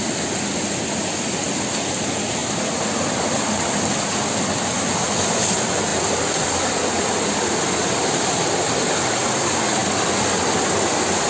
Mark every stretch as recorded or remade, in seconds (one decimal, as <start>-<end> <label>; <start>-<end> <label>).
0.0-11.3 recorded